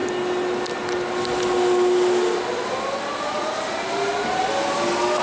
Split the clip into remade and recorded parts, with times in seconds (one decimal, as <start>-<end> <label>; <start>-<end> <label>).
0.0-5.2 recorded